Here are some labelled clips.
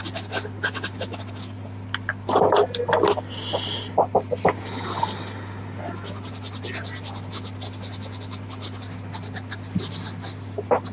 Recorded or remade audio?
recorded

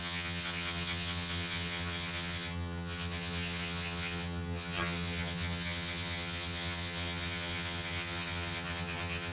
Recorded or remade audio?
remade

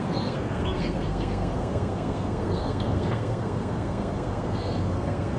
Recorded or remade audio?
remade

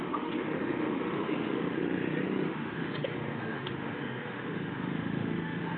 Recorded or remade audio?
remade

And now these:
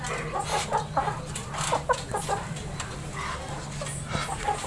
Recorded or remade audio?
recorded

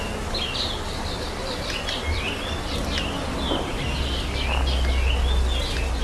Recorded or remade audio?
recorded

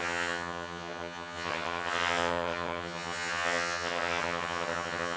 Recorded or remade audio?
remade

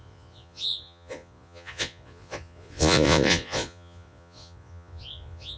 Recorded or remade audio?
remade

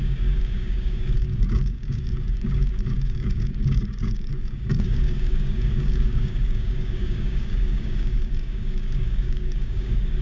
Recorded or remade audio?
remade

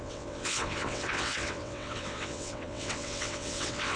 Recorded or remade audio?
remade